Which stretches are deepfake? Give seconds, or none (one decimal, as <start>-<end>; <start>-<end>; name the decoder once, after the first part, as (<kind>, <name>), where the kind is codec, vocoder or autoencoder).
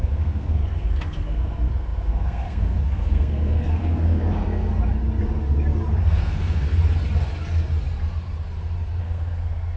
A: 0.0-4.7 (codec, SNAC); 6.0-6.7; 9.0-9.8